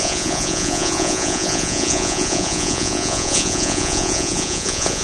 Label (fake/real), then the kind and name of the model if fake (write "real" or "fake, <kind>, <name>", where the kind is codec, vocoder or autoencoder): fake, vocoder, Vocos